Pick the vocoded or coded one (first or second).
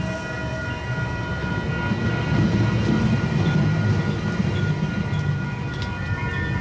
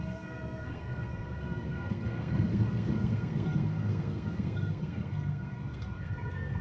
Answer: second